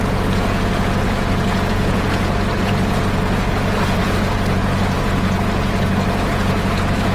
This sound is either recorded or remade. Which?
remade